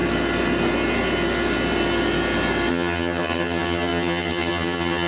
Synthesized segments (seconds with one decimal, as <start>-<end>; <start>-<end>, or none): 2.7-5.1